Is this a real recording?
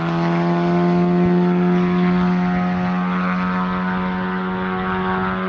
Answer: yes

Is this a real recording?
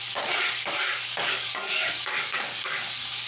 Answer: no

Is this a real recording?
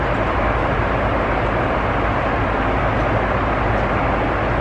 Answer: yes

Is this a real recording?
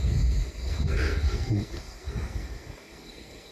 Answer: no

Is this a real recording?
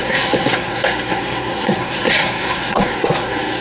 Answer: no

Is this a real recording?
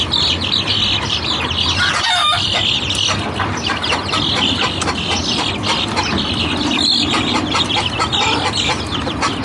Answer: yes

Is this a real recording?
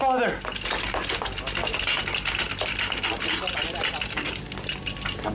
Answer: yes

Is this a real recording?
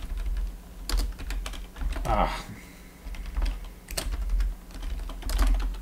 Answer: yes